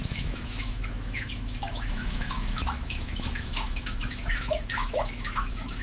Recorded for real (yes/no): no